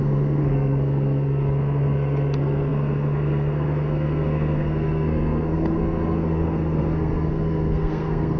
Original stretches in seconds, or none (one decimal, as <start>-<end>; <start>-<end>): none